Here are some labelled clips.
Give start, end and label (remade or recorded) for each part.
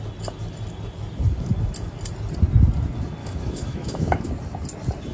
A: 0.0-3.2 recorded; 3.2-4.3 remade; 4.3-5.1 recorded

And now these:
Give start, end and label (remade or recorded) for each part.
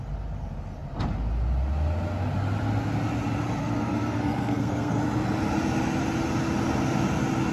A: 0.0-3.6 recorded; 3.6-5.0 remade; 5.0-7.5 recorded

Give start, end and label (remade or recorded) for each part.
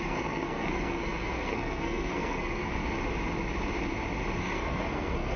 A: 0.0-2.8 remade; 2.8-4.4 recorded; 4.4-5.4 remade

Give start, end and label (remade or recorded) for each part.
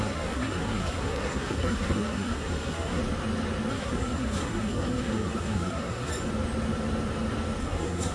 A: 0.0-3.0 remade; 3.0-3.7 recorded; 3.7-6.1 remade; 6.1-7.6 recorded; 7.6-8.1 remade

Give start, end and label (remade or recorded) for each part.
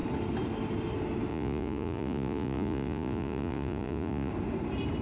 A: 0.0-1.3 recorded; 1.3-4.3 remade; 4.3-5.0 recorded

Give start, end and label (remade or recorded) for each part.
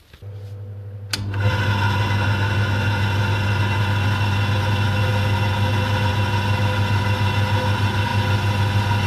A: 0.0-9.1 recorded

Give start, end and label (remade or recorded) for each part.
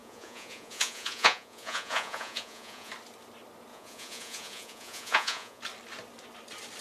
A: 0.0-2.9 remade; 2.9-3.7 recorded; 3.7-5.6 remade; 5.6-6.8 recorded